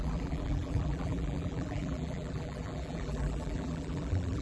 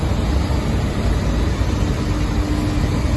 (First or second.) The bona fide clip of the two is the second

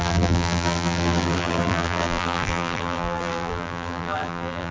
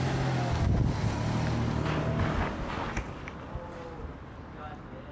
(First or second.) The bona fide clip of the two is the second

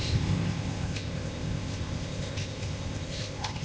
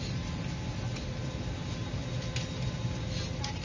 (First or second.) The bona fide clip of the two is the second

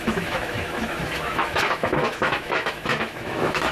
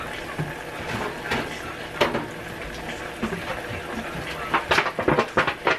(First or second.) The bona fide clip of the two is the second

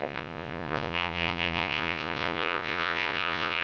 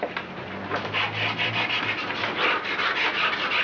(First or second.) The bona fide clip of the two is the second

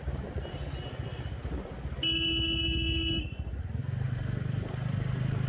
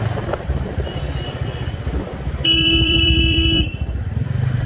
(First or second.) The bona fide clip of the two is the first